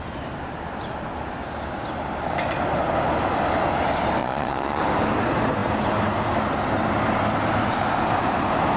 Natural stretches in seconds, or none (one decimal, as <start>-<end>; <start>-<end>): 0.0-4.2; 4.8-8.8